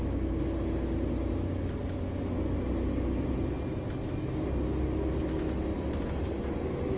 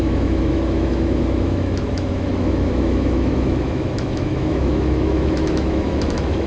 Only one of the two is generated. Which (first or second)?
second